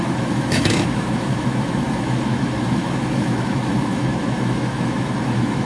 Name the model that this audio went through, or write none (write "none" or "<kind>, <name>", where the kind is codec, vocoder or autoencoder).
autoencoder, DAC-VAE